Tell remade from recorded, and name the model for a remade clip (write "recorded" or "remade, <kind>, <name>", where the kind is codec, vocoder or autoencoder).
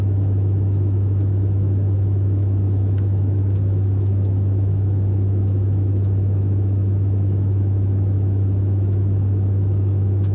remade, autoencoder, DAC-VAE